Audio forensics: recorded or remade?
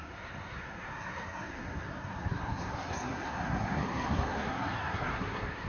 remade